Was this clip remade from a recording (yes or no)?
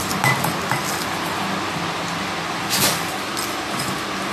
no